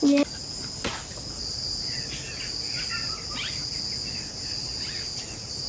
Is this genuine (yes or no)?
yes